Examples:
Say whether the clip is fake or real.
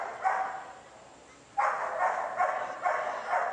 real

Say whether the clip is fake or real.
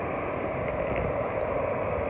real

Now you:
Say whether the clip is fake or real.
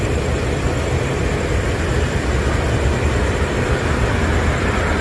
real